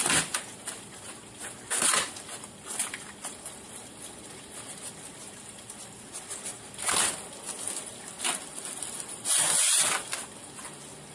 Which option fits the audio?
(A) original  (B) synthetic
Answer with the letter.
A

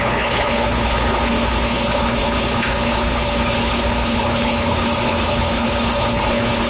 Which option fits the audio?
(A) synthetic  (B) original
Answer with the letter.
A